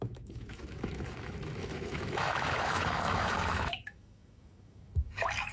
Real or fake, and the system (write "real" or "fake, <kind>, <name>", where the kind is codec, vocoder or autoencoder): fake, autoencoder, DAC-VAE